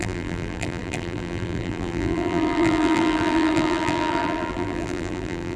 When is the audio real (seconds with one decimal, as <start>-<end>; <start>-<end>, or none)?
none